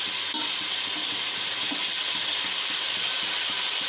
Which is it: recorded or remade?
recorded